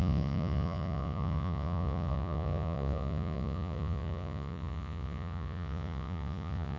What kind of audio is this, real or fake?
fake